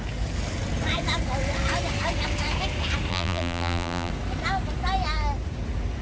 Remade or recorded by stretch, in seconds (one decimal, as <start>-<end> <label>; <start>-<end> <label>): 0.0-3.1 recorded; 3.1-4.1 remade; 4.1-6.0 recorded